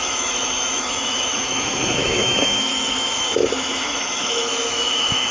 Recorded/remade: remade